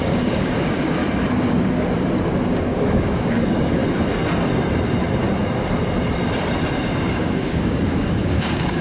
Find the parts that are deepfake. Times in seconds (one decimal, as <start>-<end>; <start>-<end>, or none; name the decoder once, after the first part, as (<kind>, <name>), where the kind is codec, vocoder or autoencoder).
0.0-1.0 (codec, DAC); 2.5-3.8; 7.1-8.8